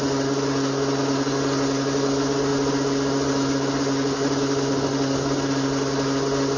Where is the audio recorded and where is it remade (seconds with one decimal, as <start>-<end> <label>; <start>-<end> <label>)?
0.0-6.6 recorded